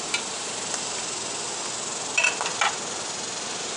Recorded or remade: recorded